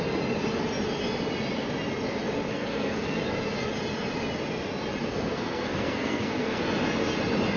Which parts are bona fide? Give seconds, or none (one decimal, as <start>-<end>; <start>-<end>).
0.0-2.5; 3.2-5.0; 6.6-7.6